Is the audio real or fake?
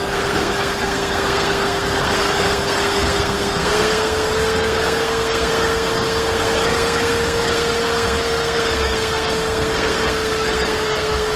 fake